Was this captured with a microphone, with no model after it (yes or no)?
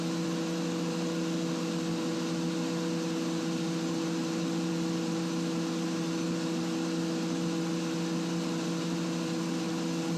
yes